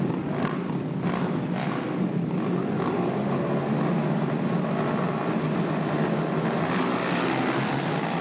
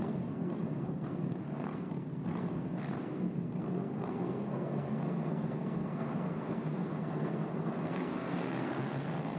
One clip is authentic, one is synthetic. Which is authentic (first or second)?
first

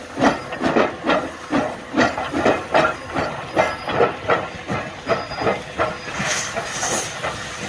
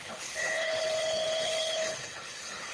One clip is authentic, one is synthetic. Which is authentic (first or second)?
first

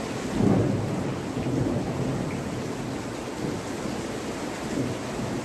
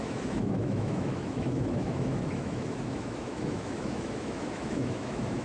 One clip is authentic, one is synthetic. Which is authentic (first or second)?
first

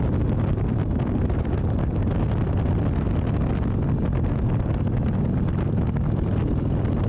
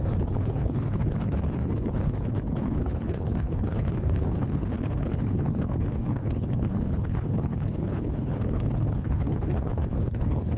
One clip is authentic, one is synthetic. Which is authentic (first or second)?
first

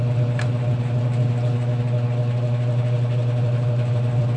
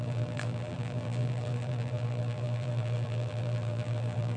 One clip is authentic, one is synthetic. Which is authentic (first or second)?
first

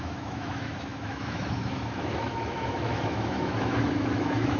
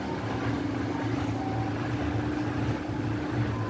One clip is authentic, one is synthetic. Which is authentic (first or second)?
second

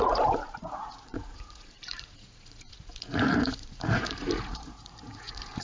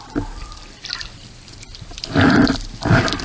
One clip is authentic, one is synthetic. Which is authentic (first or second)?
second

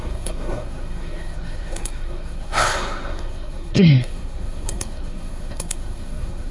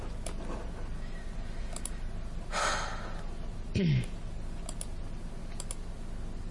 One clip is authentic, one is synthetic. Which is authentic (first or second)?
second